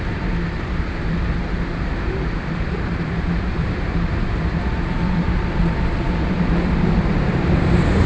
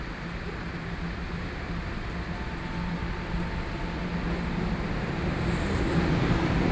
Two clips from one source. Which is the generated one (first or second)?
first